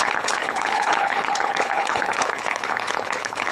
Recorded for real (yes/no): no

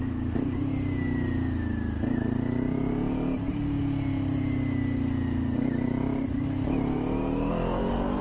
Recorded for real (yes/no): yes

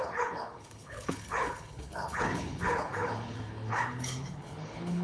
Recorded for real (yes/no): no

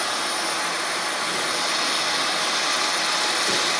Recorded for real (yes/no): yes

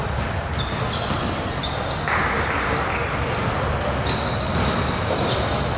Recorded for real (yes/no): yes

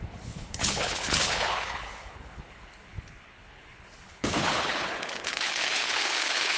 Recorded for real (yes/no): no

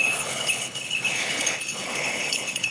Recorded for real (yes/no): no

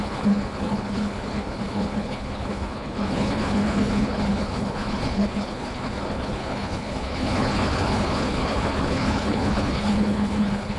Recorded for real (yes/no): no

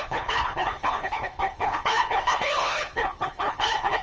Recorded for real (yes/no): no